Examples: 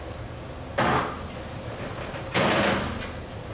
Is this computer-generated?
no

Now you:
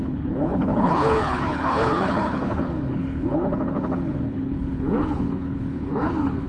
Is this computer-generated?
yes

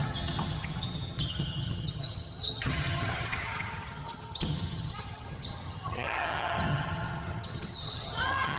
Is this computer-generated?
yes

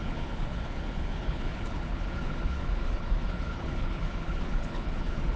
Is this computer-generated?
yes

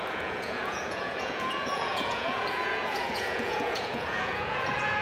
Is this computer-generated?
yes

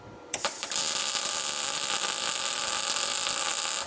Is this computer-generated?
yes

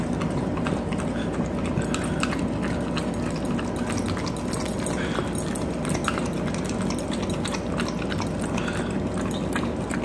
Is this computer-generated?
no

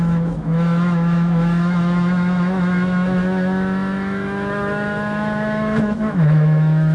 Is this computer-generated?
yes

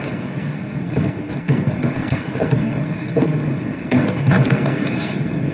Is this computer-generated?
yes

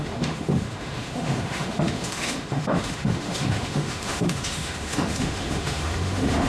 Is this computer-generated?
yes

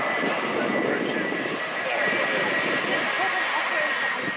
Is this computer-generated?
no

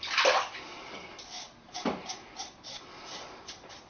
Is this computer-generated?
yes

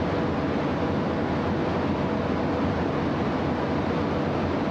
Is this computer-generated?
no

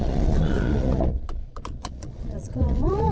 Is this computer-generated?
yes